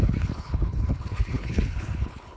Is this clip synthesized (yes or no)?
yes